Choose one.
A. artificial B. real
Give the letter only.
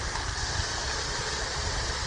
B